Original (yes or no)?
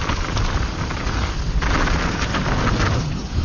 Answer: yes